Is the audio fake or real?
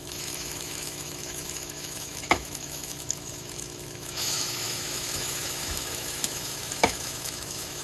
fake